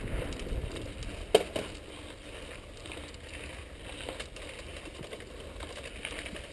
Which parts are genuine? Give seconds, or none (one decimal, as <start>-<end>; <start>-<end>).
0.0-6.5